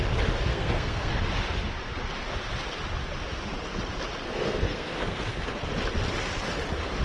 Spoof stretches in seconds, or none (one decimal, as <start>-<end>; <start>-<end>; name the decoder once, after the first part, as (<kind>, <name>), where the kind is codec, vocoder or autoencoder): 0.5-1.1 (codec, SNAC); 4.2-5.4

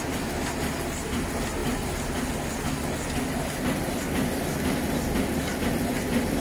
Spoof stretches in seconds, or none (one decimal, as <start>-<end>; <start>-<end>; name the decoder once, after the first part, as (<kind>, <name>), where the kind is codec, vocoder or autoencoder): none

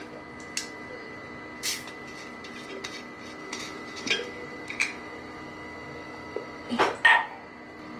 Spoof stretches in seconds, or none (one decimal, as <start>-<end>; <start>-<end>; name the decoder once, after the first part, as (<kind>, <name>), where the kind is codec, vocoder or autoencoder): 3.4-6.8 (autoencoder, DAC-VAE)